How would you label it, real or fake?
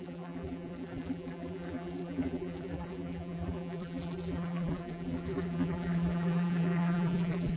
fake